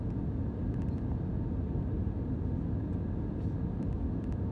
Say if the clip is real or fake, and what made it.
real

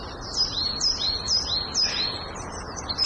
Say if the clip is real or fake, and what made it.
real